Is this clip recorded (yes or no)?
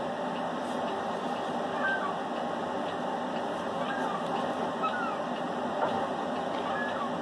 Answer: yes